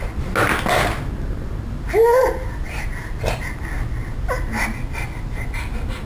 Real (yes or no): yes